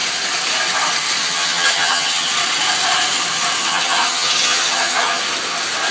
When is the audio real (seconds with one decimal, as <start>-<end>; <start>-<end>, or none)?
0.0-1.2; 2.3-3.6; 5.2-5.9